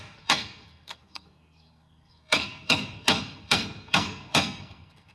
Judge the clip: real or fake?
fake